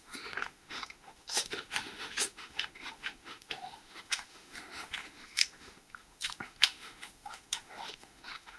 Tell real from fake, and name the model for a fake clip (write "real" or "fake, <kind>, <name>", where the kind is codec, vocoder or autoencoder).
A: fake, autoencoder, DAC-VAE